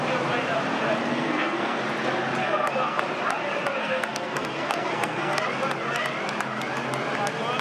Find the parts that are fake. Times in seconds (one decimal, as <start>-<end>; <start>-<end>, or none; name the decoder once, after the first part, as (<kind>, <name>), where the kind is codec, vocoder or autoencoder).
1.1-1.8 (codec, SNAC); 2.4-3.0; 3.8-5.4